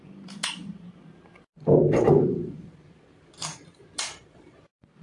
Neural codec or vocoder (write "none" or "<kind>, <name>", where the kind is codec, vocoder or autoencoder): vocoder, BigVGAN v2